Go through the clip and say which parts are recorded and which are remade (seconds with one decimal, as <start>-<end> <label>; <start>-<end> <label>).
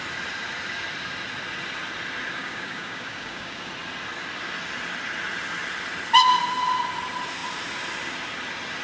0.0-2.3 recorded; 2.3-3.7 remade; 3.7-8.8 recorded